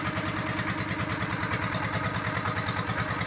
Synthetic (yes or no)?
no